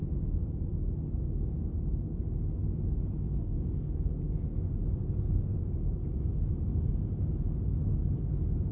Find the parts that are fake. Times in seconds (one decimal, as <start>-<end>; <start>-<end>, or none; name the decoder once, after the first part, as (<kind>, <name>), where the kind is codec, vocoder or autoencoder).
3.3-4.2 (codec, DAC); 6.0-6.9